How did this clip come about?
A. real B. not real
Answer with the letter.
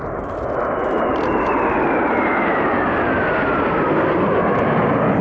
A